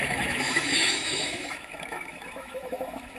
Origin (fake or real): fake